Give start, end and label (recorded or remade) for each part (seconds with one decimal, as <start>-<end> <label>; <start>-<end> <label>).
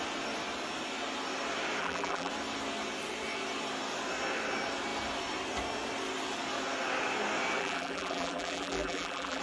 0.0-1.8 recorded; 1.8-2.3 remade; 2.3-7.6 recorded; 7.6-9.4 remade